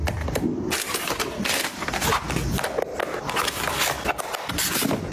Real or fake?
real